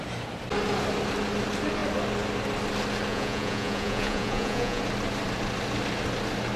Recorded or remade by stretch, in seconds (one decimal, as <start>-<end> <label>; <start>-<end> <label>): 0.0-3.1 recorded; 3.1-4.8 remade; 4.8-6.6 recorded